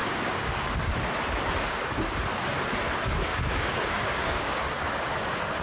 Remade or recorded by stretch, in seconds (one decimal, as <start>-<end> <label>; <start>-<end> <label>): 0.0-0.9 remade; 0.9-3.3 recorded; 3.3-4.6 remade; 4.6-5.6 recorded